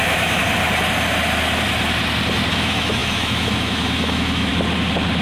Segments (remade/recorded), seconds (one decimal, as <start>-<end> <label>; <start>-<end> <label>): 0.0-0.4 remade; 0.4-2.5 recorded; 2.5-4.5 remade; 4.5-5.2 recorded